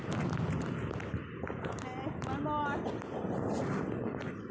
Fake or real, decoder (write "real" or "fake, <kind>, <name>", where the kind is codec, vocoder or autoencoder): real